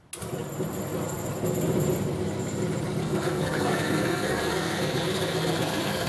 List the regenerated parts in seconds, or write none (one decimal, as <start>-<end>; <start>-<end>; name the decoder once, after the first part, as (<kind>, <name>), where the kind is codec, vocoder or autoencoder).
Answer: 3.0-6.1 (codec, SNAC)